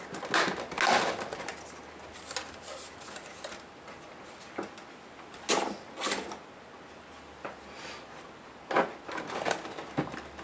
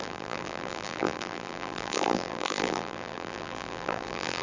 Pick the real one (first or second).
first